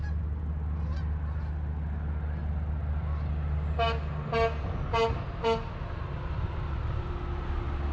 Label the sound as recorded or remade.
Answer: recorded